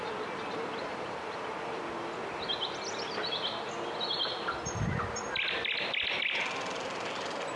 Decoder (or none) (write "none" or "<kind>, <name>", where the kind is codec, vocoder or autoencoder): vocoder, BigVGAN v2